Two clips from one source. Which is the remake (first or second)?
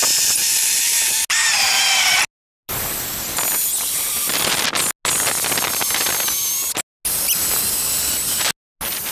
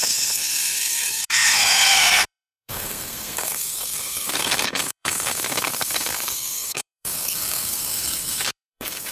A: second